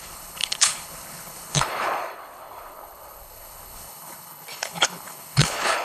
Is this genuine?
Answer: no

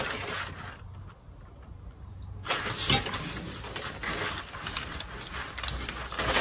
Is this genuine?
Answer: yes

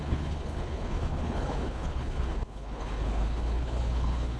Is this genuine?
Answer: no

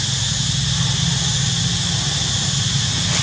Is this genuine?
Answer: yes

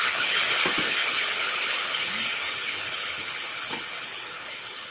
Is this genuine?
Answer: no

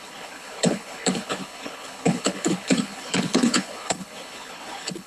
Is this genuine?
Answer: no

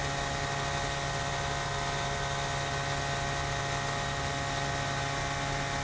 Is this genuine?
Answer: yes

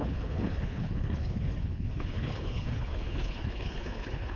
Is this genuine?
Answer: no